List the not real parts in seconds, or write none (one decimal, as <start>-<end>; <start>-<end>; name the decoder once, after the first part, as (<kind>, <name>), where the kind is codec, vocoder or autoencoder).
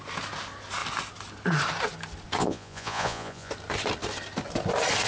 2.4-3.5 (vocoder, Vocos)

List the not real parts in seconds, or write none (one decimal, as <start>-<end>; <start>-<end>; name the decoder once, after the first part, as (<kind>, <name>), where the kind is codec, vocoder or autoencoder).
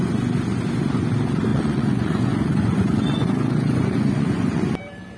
1.5-4.6 (vocoder, Vocos)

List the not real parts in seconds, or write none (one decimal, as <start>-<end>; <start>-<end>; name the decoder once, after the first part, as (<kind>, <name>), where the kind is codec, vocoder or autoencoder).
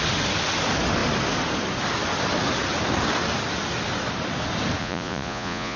4.8-5.8 (vocoder, Vocos)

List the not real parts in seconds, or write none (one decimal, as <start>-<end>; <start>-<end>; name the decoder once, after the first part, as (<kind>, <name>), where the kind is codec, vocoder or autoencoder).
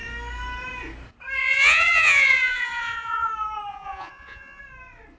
1.4-3.3 (vocoder, Vocos); 3.7-4.6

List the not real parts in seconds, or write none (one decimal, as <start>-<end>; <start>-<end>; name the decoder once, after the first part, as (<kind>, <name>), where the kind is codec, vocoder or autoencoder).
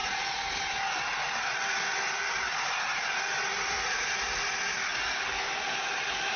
none